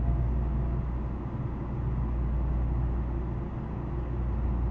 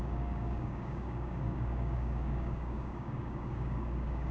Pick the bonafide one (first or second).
first